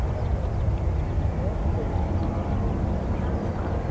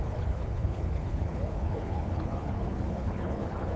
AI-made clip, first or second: second